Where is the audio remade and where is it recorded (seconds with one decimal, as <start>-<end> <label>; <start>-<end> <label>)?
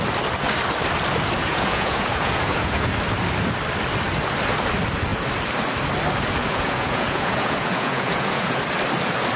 0.0-1.4 recorded; 1.4-2.9 remade; 2.9-6.4 recorded; 6.4-8.6 remade; 8.6-9.4 recorded